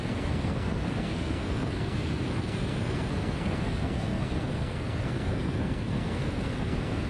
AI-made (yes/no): yes